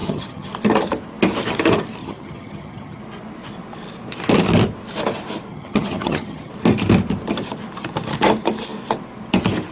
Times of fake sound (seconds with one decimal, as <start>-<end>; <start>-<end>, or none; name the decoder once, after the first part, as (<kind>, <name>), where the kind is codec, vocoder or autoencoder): 0.0-0.5 (vocoder, HiFi-GAN); 2.0-3.0; 5.5-6.5